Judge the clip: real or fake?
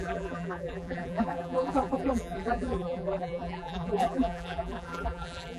fake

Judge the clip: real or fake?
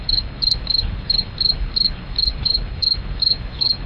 fake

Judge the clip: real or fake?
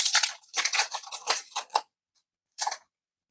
fake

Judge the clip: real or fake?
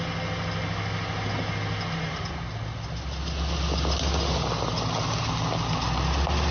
real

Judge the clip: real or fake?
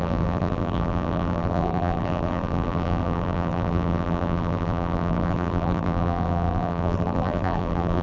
fake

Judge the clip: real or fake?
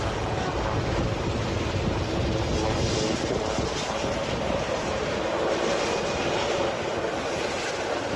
real